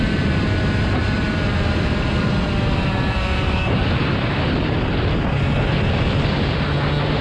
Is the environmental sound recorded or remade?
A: recorded